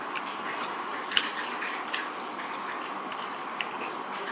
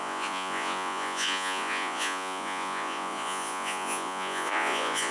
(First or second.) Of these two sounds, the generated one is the second